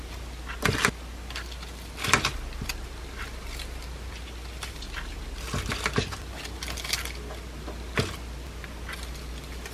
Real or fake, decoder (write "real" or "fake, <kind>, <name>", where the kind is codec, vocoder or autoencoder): real